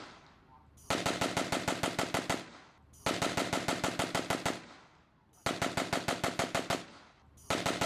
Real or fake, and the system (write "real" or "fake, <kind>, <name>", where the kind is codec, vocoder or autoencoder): real